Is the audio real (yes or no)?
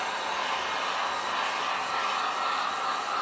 yes